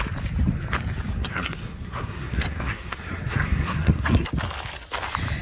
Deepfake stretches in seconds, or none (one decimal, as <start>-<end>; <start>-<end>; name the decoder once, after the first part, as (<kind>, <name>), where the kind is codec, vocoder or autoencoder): 1.1-4.3 (codec, SNAC)